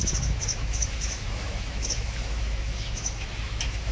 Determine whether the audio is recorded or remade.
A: remade